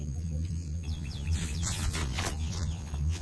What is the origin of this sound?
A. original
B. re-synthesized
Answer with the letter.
B